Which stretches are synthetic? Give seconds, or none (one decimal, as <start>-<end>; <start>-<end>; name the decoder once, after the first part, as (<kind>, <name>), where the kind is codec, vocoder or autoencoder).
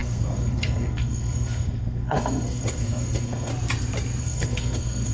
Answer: 0.0-3.5 (codec, SNAC); 4.2-5.1